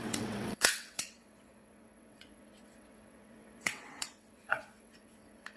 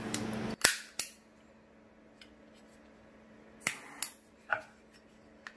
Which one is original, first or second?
second